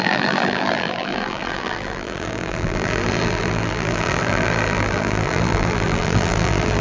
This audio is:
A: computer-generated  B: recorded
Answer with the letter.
A